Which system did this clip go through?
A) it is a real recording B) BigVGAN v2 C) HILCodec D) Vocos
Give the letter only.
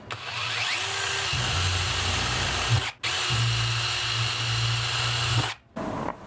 A